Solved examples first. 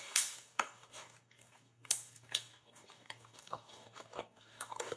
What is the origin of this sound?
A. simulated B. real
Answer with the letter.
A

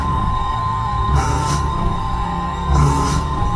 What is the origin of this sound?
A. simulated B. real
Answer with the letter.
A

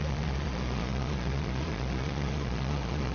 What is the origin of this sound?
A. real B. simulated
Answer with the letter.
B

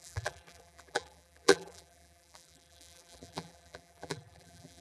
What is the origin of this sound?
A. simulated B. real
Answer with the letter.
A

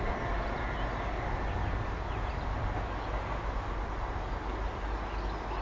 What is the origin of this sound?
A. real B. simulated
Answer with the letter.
A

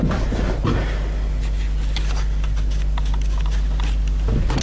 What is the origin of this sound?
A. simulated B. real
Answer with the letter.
B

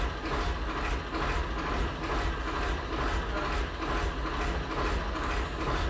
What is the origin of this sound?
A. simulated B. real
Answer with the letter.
B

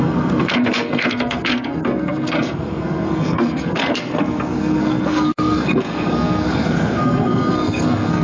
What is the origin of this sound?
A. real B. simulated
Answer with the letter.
B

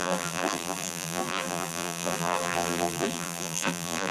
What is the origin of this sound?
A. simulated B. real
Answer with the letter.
A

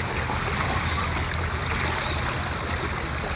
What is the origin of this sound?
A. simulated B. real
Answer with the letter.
B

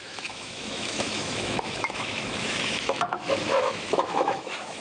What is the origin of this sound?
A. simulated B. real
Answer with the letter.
A